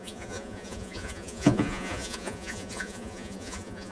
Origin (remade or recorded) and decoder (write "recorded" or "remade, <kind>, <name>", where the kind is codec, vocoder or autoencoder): remade, vocoder, Vocos